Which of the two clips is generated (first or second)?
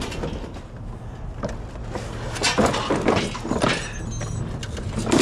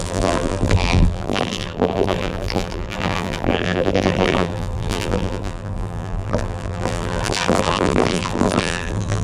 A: second